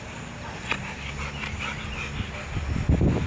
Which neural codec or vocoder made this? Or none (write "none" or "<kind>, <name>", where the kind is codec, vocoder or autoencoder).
none